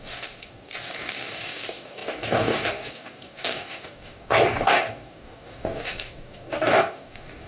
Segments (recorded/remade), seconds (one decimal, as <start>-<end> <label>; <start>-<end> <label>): 0.0-7.5 remade